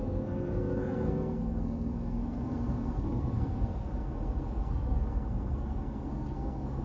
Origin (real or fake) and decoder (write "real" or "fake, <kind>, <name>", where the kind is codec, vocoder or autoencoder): fake, codec, SNAC